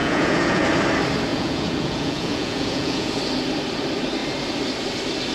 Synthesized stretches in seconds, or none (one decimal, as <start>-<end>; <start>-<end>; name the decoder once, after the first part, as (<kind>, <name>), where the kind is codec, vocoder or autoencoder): 0.0-0.6 (vocoder, Vocos); 1.3-3.2